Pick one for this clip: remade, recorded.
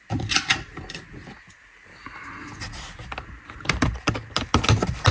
recorded